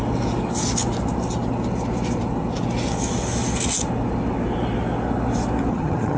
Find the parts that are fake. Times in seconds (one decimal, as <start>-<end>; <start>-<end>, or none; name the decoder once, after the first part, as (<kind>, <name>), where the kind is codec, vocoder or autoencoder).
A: 5.7-6.2 (vocoder, HiFi-GAN)